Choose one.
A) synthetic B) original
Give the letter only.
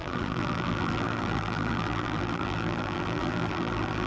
A